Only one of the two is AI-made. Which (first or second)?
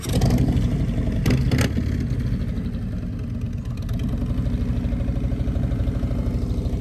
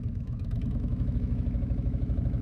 second